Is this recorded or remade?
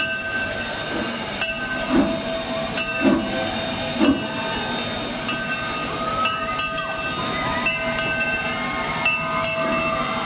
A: recorded